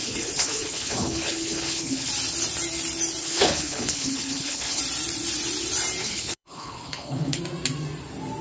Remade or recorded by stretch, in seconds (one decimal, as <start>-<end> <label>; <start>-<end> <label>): 0.0-2.1 remade; 2.1-3.2 recorded; 3.2-4.8 remade; 4.8-6.0 recorded; 6.0-7.4 remade; 7.4-8.4 recorded